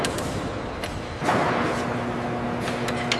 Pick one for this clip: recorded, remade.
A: recorded